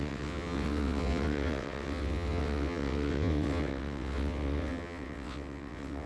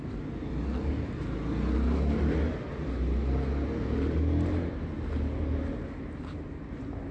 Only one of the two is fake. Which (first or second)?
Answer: first